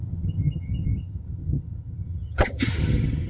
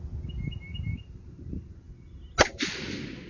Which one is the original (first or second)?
second